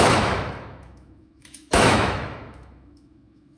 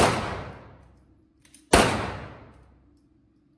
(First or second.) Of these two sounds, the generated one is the first